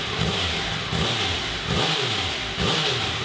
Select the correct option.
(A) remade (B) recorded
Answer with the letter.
B